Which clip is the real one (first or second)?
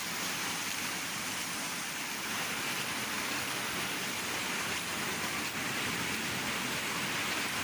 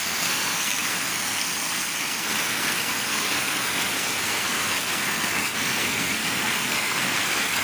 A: first